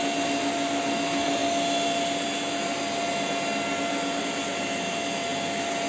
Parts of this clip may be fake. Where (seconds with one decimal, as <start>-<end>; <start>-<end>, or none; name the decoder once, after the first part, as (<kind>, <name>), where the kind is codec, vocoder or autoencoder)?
none